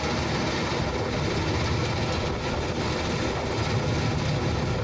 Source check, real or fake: real